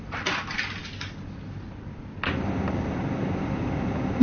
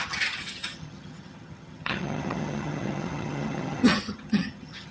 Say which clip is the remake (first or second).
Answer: second